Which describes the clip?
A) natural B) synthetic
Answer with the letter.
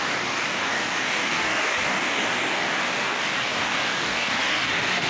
B